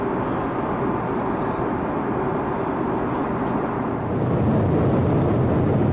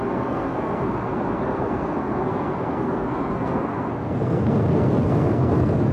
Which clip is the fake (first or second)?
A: second